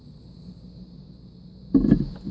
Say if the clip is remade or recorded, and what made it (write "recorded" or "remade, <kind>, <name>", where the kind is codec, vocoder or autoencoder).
recorded